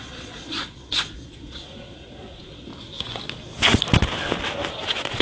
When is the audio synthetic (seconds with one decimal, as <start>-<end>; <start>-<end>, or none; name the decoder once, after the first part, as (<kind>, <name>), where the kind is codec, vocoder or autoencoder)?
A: 0.0-2.7 (vocoder, Vocos); 4.7-5.2